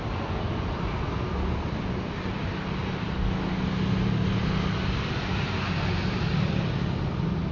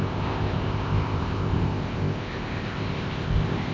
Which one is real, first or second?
first